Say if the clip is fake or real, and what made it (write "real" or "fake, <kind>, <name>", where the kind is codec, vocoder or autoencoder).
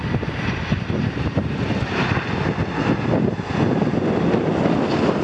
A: real